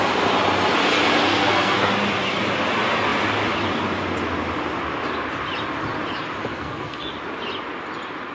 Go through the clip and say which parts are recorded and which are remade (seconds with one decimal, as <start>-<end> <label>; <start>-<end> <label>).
0.0-1.3 recorded; 1.3-1.9 remade; 1.9-6.5 recorded; 6.5-7.1 remade; 7.1-8.3 recorded